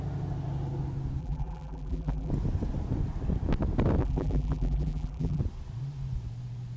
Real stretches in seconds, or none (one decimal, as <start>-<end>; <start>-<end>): 0.0-1.2; 2.3-4.0; 5.4-6.8